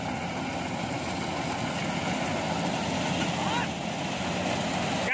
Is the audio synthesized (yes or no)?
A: no